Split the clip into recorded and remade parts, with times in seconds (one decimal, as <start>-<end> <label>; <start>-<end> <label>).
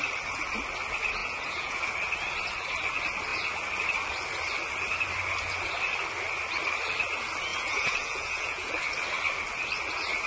0.0-1.2 recorded; 1.2-1.8 remade; 1.8-7.5 recorded; 7.5-8.7 remade; 8.7-10.3 recorded